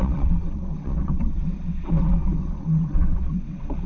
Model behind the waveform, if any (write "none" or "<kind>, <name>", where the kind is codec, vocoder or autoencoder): vocoder, WaveNeXt